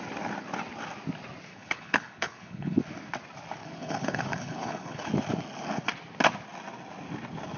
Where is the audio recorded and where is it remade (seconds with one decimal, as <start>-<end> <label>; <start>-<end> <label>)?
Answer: 0.0-1.5 recorded; 1.5-2.8 remade; 2.8-3.6 recorded; 3.6-5.1 remade; 5.1-7.6 recorded